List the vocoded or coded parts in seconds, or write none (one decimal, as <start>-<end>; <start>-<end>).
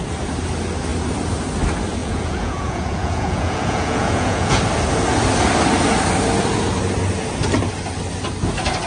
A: 2.0-4.6